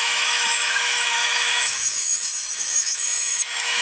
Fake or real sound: fake